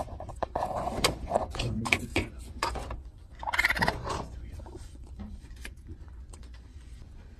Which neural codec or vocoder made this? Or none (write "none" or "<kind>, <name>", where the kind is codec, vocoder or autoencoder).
vocoder, Vocos